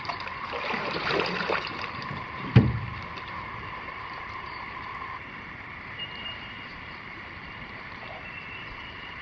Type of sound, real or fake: fake